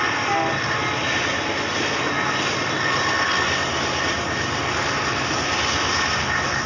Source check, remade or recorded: recorded